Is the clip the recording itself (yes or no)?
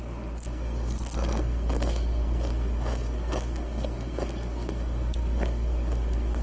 no